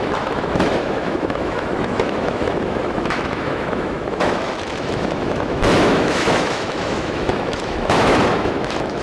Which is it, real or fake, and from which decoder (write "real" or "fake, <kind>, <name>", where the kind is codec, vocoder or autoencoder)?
fake, autoencoder, DAC-VAE